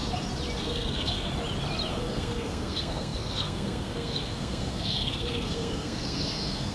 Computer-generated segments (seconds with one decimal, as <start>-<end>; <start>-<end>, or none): 0.6-1.3; 1.9-6.7